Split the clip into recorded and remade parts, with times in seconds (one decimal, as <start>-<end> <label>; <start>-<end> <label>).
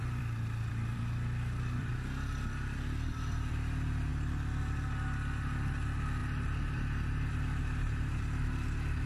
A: 0.0-1.9 remade; 1.9-3.1 recorded; 3.1-4.1 remade; 4.1-5.7 recorded; 5.7-9.1 remade